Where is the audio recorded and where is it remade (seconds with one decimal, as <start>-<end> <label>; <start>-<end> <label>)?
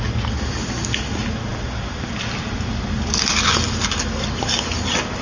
0.0-5.2 recorded